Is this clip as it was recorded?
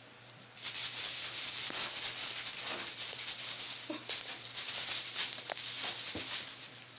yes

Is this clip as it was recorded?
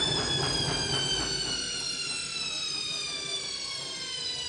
yes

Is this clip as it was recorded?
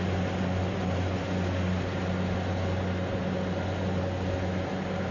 yes